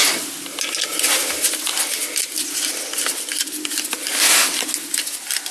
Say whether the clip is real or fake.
real